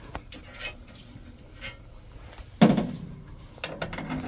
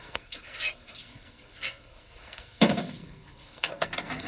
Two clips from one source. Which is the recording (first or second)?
first